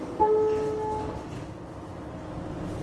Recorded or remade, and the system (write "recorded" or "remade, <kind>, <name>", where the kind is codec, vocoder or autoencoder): recorded